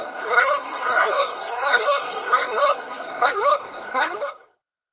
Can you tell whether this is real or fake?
fake